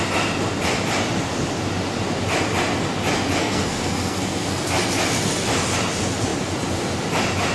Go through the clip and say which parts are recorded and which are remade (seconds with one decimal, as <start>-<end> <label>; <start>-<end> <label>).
0.0-3.4 recorded; 3.4-4.7 remade; 4.7-7.5 recorded